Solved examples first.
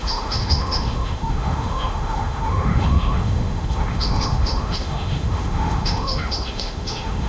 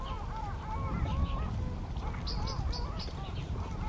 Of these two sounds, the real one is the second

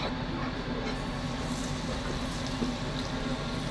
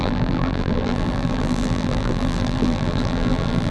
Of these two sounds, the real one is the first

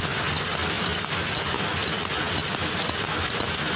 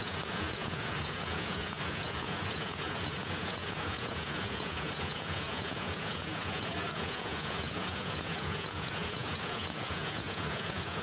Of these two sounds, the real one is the first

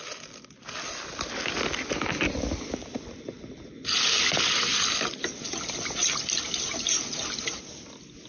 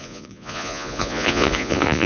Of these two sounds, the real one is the first